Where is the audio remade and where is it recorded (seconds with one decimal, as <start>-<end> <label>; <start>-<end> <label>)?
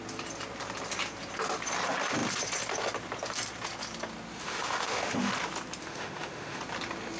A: 0.0-4.4 recorded; 4.4-5.3 remade; 5.3-5.8 recorded; 5.8-6.6 remade; 6.6-7.2 recorded